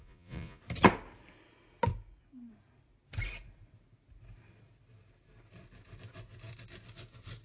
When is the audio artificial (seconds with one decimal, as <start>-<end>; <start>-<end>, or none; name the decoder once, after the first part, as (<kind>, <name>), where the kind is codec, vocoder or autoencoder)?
0.0-0.6 (vocoder, Vocos)